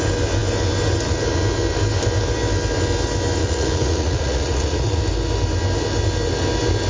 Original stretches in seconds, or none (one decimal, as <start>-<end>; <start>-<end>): 0.0-3.4; 5.0-6.9